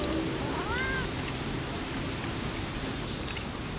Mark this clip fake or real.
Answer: real